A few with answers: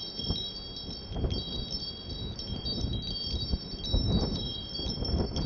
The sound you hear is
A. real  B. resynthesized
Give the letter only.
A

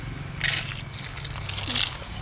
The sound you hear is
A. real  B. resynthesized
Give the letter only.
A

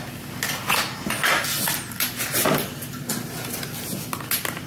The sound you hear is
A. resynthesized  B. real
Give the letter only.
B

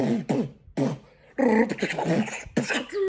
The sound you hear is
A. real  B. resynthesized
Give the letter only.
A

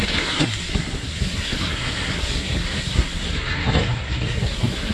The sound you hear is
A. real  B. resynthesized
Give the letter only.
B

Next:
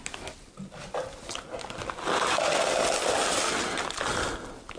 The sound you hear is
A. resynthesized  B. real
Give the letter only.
B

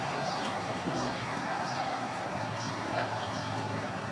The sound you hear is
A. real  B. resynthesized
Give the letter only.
B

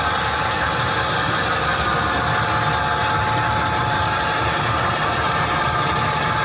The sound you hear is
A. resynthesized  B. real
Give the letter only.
B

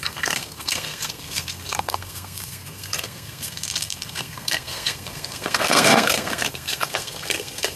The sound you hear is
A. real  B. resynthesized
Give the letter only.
B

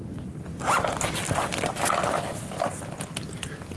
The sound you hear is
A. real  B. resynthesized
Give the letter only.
A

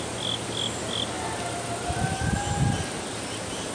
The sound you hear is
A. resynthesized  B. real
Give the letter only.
B